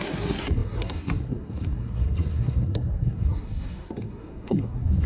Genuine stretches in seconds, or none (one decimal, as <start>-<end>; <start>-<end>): none